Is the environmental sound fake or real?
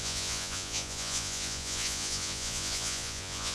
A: fake